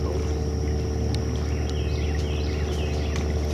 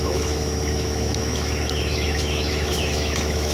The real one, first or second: first